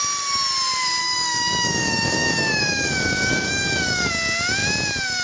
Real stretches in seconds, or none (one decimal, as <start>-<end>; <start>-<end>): 0.0-1.0; 4.1-5.2